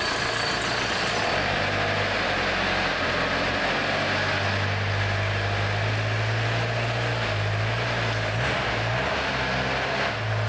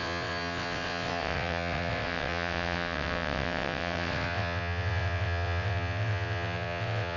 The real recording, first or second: first